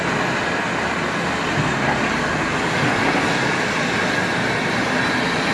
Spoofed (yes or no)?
no